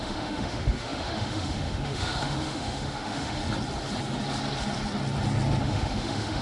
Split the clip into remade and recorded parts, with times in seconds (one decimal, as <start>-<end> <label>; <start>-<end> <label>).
0.0-3.4 remade; 3.4-5.6 recorded; 5.6-6.4 remade